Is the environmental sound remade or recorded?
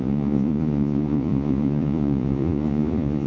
remade